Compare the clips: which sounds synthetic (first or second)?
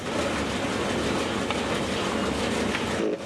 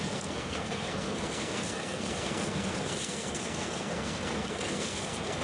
second